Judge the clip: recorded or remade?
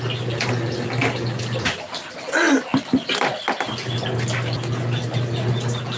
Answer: recorded